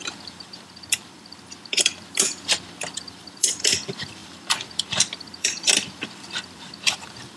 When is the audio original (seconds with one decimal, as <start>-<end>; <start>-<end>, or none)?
none